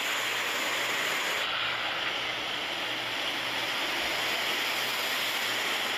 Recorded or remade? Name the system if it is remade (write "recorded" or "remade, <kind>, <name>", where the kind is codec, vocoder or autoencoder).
recorded